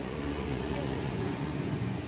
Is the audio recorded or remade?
remade